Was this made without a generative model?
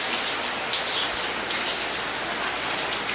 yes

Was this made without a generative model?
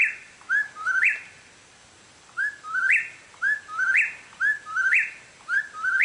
yes